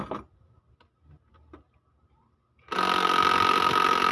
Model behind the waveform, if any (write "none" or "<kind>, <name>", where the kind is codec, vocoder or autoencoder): none